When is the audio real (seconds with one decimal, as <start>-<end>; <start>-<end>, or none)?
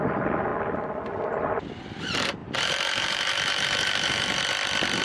0.0-2.4; 4.4-5.0